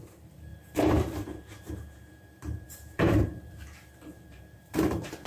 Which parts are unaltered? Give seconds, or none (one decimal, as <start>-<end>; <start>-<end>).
none